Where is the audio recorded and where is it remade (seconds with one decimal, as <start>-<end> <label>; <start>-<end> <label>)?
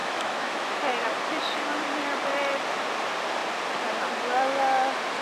0.0-0.8 remade; 0.8-5.2 recorded